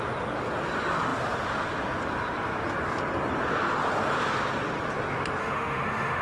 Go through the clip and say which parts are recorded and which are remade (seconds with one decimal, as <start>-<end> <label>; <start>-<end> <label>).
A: 0.0-5.4 recorded; 5.4-6.2 remade